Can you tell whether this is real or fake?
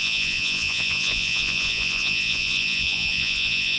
fake